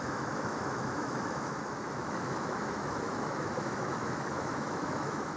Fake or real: fake